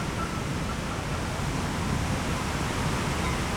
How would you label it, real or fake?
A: real